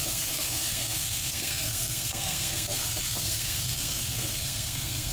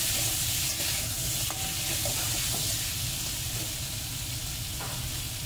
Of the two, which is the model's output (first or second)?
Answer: first